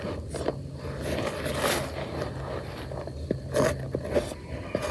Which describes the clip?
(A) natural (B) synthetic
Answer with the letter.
A